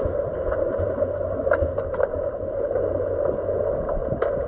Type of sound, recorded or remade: recorded